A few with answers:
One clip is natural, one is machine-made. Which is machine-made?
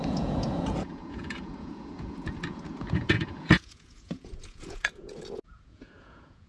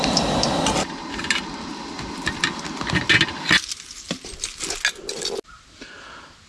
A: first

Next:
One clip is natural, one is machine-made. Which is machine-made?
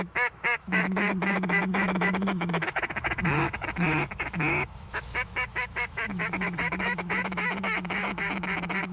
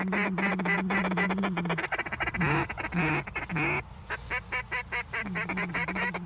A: first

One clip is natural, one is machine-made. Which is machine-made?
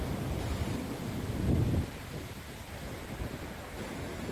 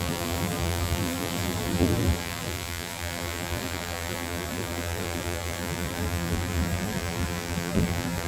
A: second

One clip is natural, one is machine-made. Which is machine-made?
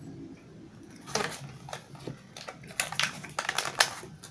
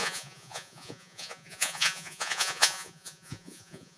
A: second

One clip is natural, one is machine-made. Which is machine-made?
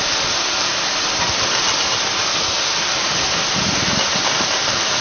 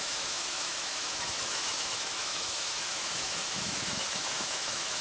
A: second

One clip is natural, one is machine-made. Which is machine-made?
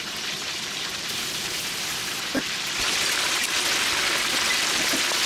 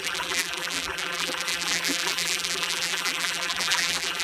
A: second